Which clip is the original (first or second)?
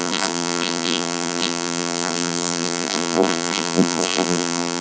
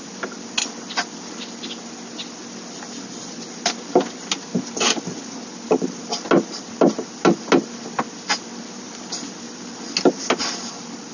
second